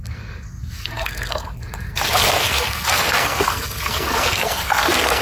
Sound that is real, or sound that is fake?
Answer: fake